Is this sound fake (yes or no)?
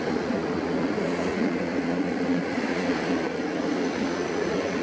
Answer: yes